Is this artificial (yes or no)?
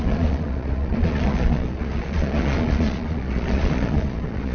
yes